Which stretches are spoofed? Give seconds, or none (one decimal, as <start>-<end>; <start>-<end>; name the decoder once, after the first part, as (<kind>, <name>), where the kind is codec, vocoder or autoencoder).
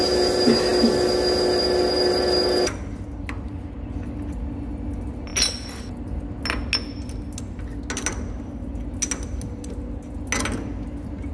none